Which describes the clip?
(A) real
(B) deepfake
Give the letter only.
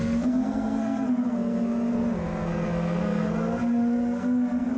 B